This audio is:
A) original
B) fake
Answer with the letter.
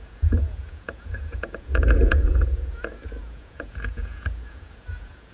B